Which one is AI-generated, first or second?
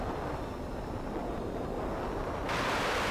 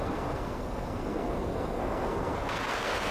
second